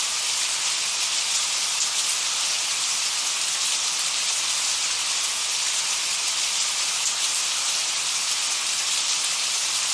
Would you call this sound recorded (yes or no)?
yes